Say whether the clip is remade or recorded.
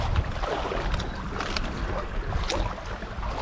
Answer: recorded